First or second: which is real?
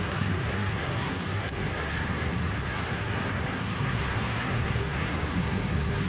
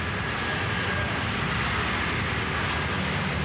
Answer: second